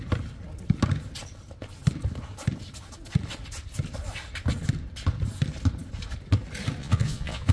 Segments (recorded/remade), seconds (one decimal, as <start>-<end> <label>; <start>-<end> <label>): 0.0-6.8 recorded; 6.8-7.5 remade

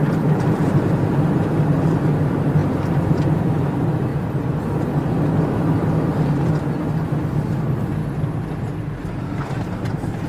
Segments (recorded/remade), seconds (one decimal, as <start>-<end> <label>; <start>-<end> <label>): 0.0-4.1 remade; 4.1-7.3 recorded; 7.3-8.0 remade; 8.0-9.2 recorded; 9.2-10.3 remade

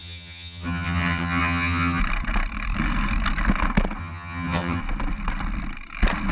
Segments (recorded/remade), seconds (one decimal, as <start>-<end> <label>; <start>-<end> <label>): 0.0-2.0 remade; 2.0-4.0 recorded; 4.0-4.8 remade; 4.8-6.3 recorded

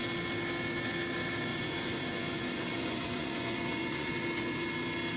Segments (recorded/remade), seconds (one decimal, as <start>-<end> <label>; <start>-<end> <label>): 0.0-1.5 recorded; 1.5-4.1 remade; 4.1-5.2 recorded